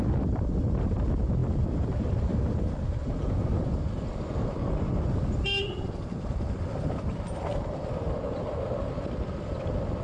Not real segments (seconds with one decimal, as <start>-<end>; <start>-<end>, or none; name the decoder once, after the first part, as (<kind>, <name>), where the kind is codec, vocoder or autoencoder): none